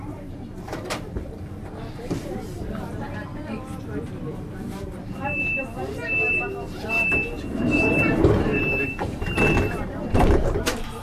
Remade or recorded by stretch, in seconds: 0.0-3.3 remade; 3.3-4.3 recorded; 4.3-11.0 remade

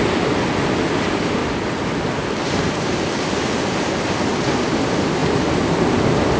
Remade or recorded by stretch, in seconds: 0.0-1.4 recorded; 1.4-3.1 remade; 3.1-5.2 recorded; 5.2-6.0 remade; 6.0-6.4 recorded

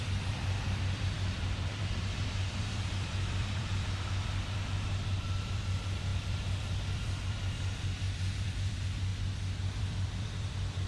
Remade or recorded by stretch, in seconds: 0.0-9.1 remade; 9.1-9.6 recorded; 9.6-10.9 remade